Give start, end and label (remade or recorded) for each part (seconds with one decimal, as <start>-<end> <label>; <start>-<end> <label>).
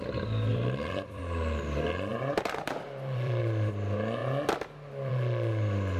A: 0.0-0.5 recorded; 0.5-1.2 remade; 1.2-2.1 recorded; 2.1-3.4 remade; 3.4-6.0 recorded